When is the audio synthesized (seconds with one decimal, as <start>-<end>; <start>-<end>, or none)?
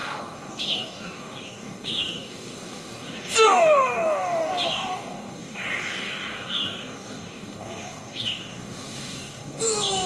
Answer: 0.0-10.1